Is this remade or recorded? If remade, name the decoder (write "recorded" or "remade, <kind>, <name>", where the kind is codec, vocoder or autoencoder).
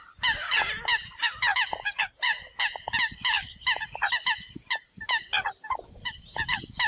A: recorded